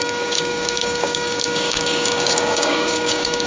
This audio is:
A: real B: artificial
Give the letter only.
B